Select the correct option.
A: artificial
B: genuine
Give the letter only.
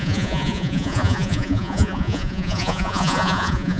A